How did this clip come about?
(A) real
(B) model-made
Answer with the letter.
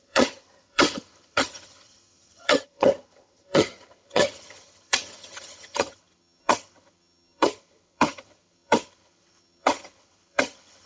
B